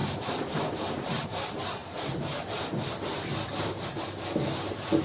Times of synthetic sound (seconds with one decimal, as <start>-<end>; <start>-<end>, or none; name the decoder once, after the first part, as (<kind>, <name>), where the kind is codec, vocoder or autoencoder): 0.0-1.4 (vocoder, BigVGAN v2)